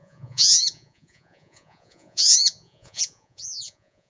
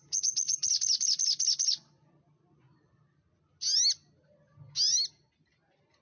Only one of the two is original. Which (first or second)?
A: second